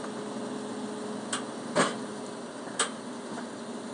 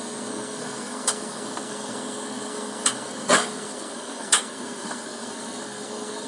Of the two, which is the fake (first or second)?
second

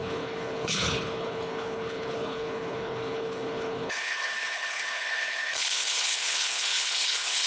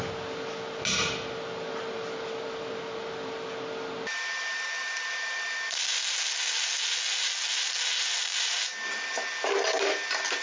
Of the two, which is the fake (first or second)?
first